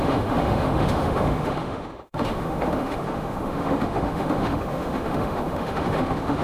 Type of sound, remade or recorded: remade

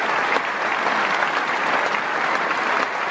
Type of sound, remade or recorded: recorded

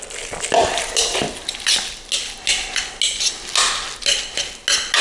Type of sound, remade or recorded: recorded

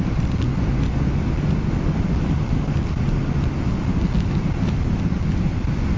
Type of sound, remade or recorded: recorded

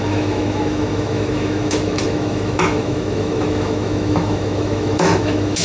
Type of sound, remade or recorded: remade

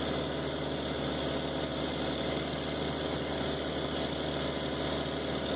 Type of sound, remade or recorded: recorded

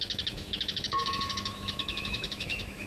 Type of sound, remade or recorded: remade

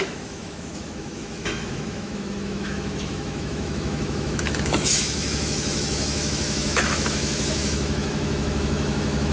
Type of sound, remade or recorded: remade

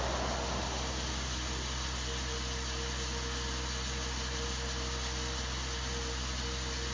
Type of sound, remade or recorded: recorded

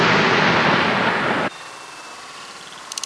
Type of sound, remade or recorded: recorded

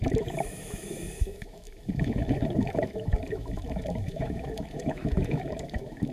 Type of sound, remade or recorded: remade